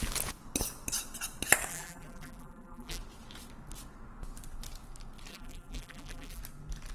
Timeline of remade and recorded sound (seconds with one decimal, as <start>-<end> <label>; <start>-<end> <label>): 0.0-1.7 recorded; 1.7-3.0 remade; 3.0-5.3 recorded; 5.3-6.4 remade; 6.4-6.9 recorded